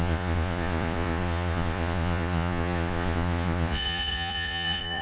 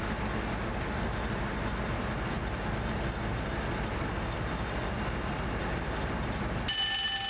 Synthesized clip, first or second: first